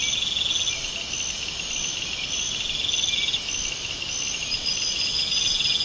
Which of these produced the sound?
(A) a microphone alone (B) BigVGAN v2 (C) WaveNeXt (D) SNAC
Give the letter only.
A